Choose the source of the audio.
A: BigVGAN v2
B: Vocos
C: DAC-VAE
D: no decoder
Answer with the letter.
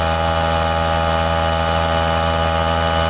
D